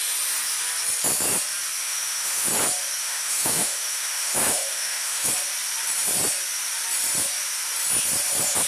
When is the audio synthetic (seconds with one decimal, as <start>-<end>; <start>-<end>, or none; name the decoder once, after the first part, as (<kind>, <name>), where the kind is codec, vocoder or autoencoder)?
1.8-2.5 (autoencoder, DAC-VAE); 3.0-5.3